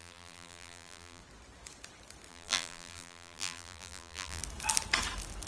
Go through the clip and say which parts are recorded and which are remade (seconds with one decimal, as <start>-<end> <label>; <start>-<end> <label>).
0.0-1.2 remade; 1.2-2.3 recorded; 2.3-4.4 remade; 4.4-5.5 recorded